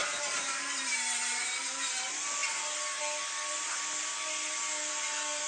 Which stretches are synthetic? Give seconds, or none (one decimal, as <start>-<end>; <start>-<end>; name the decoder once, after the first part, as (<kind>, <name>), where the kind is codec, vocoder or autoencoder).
0.0-1.2 (vocoder, BigVGAN v2)